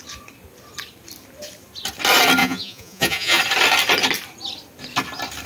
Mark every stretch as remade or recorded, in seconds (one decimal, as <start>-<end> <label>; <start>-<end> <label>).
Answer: 0.0-2.4 recorded; 2.4-3.4 remade; 3.4-5.5 recorded